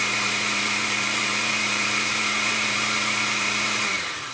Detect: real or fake fake